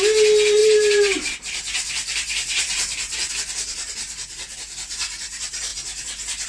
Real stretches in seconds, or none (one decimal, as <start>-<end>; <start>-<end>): 0.0-0.6; 3.3-6.5